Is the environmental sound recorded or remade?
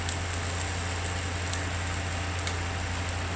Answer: recorded